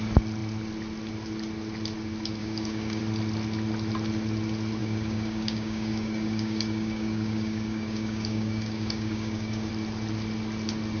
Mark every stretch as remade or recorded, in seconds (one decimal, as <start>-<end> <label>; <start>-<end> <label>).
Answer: 0.0-2.4 recorded; 2.4-3.0 remade; 3.0-4.8 recorded; 4.8-9.7 remade; 9.7-11.0 recorded